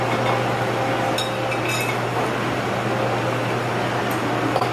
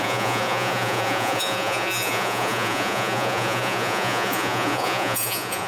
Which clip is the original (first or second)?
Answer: first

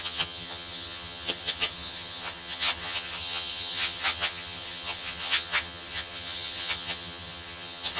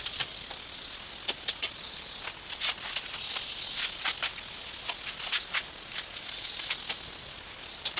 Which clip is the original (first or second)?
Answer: second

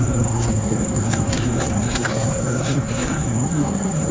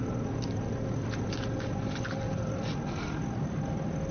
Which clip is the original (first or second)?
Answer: second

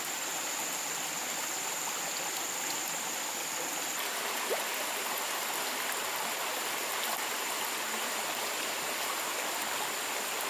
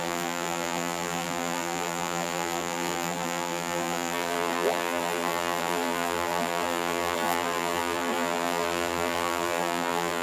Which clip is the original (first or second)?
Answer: first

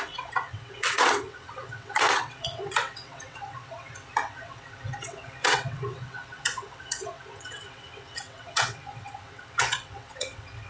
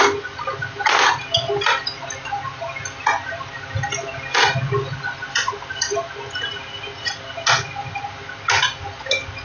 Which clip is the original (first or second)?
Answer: second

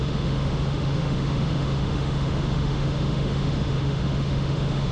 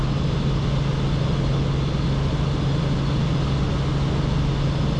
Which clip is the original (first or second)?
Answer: second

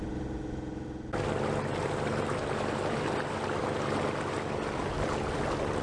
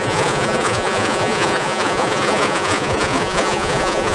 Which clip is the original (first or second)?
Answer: first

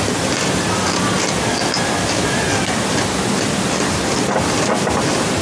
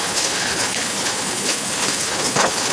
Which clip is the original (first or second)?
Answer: first